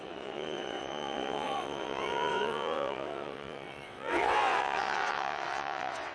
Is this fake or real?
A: fake